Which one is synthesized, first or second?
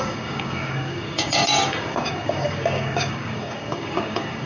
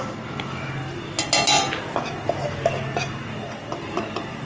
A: first